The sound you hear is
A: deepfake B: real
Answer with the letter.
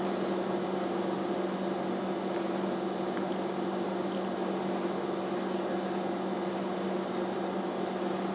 B